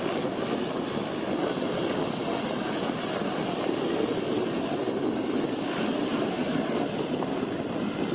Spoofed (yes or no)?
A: no